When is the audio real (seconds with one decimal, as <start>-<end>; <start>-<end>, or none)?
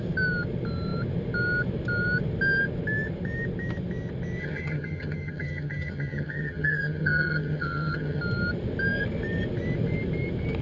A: 0.0-4.4; 8.2-10.6